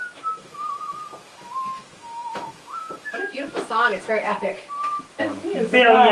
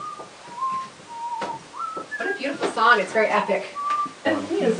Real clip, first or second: second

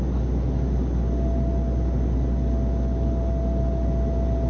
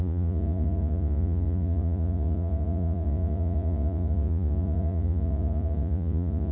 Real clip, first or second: first